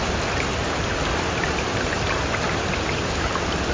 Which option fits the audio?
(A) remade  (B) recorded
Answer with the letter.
B